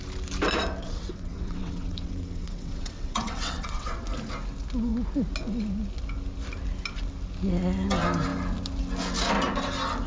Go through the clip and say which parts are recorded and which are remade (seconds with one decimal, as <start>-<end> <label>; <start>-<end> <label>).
0.0-0.8 recorded; 0.8-4.0 remade; 4.0-10.1 recorded